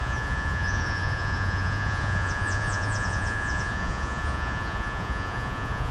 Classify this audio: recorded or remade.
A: remade